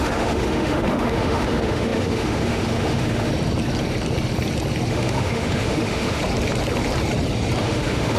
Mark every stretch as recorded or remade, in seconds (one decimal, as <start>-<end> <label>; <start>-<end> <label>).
0.0-3.3 remade; 3.3-4.9 recorded; 4.9-6.2 remade; 6.2-7.6 recorded; 7.6-8.2 remade